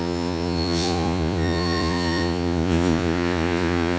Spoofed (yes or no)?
yes